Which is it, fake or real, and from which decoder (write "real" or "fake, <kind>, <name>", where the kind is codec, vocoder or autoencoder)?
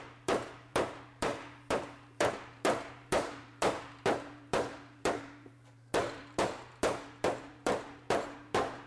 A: fake, vocoder, BigVGAN v2